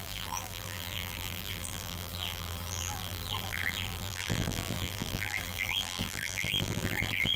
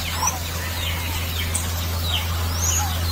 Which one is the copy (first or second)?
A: first